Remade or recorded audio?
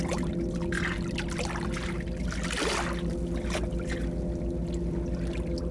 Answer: recorded